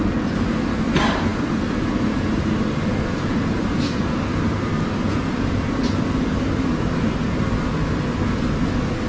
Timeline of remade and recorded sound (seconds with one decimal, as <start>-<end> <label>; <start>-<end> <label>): 0.0-9.1 recorded